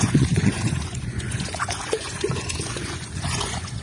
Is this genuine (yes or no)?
no